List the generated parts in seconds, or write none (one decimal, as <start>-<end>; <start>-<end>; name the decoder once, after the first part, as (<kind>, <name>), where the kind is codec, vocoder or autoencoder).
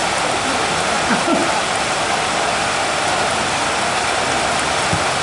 none